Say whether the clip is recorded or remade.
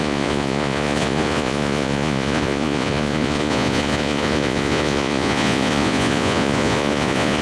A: remade